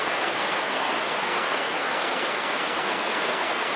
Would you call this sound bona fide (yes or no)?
no